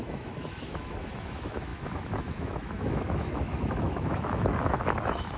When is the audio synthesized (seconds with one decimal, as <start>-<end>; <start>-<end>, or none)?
0.0-5.4